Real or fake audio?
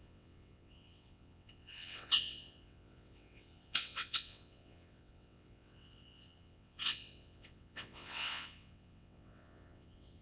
fake